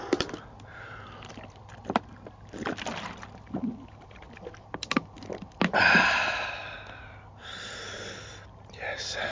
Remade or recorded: recorded